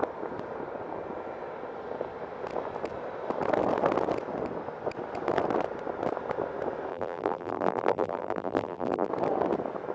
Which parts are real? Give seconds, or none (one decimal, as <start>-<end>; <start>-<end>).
0.0-6.9; 9.1-9.9